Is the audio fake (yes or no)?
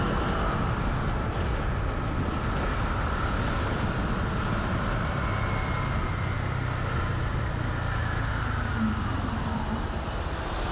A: no